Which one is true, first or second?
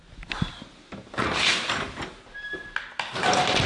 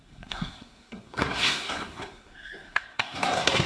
first